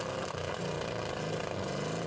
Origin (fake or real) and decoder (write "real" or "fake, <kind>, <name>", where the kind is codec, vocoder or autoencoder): real